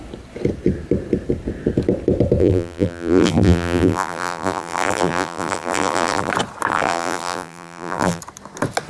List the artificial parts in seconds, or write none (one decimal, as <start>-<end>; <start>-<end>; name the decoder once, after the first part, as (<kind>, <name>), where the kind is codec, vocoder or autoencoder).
2.4-6.3 (vocoder, BigVGAN v2); 6.7-8.2